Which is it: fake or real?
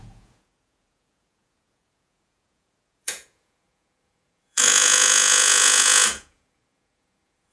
fake